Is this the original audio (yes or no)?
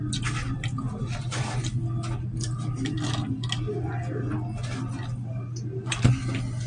yes